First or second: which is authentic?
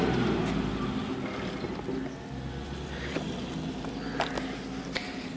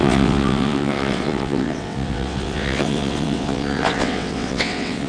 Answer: first